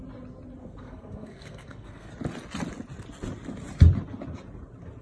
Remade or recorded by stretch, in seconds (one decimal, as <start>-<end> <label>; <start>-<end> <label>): 0.0-0.6 recorded; 0.6-2.1 remade; 2.1-5.0 recorded